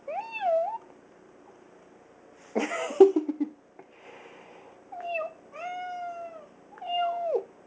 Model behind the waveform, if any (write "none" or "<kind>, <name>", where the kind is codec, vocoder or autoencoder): none